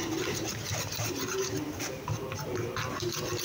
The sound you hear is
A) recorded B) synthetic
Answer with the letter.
A